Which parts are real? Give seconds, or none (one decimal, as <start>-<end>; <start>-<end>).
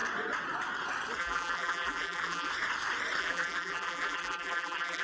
0.0-1.2; 2.5-3.2